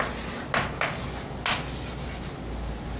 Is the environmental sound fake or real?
real